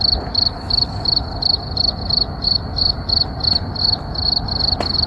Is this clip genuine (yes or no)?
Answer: yes